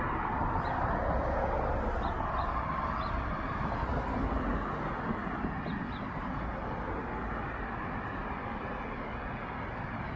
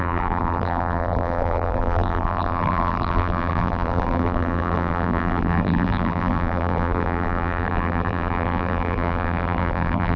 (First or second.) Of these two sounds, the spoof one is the second